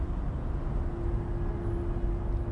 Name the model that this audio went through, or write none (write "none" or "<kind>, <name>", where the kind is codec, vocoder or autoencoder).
none